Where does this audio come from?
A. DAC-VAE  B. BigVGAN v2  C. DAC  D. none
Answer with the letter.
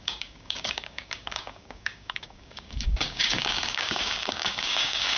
C